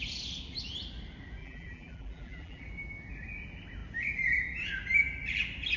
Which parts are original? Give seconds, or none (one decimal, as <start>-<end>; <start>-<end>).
0.0-1.4; 2.6-5.8